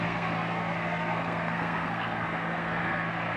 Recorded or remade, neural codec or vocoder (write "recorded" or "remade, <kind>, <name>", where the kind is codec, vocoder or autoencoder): remade, codec, SNAC